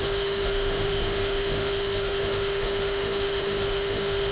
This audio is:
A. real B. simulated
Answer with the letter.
B